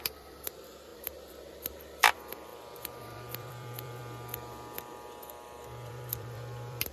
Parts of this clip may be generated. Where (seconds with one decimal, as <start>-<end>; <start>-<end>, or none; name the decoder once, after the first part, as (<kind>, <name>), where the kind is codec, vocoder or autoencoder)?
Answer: 0.0-4.0 (vocoder, BigVGAN v2); 5.9-6.9